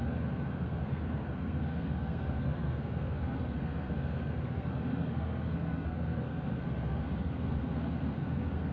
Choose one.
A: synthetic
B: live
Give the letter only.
A